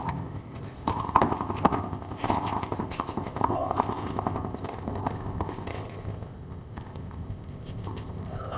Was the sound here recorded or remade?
remade